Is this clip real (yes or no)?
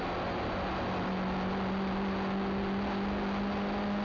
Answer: yes